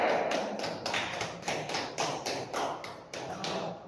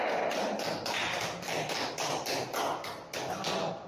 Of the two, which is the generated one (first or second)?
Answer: first